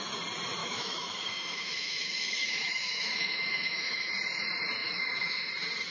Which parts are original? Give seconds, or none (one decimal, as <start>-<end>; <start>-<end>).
0.0-0.6; 4.1-4.8; 5.5-5.9